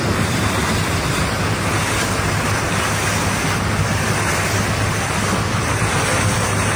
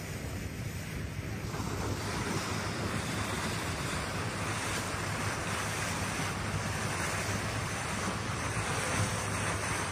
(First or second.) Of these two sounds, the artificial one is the second